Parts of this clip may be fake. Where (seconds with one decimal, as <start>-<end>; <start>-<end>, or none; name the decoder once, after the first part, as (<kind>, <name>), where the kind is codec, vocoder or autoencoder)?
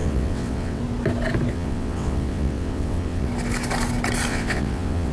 0.0-0.8 (vocoder, WaveNeXt); 1.5-3.3; 4.3-5.1